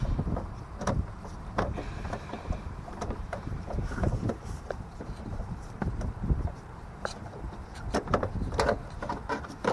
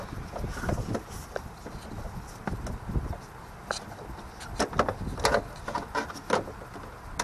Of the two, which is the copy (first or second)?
first